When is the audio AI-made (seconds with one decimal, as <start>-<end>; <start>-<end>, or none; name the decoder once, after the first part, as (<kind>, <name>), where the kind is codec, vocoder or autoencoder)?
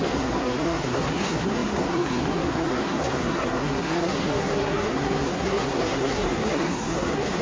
0.0-7.4 (codec, SNAC)